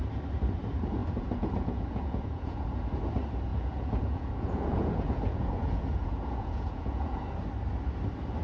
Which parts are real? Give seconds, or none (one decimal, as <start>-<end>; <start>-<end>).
0.0-1.0; 2.8-3.5; 7.2-8.4